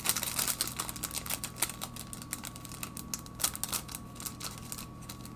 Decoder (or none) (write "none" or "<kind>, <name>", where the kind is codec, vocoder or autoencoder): none